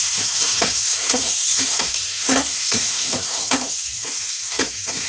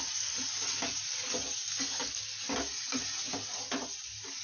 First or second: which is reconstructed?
first